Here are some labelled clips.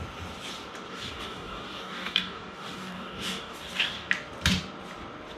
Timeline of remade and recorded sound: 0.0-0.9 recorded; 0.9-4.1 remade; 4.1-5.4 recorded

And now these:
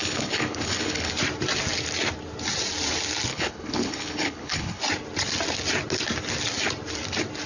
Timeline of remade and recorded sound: 0.0-1.1 remade; 1.1-3.3 recorded; 3.3-4.8 remade; 4.8-7.5 recorded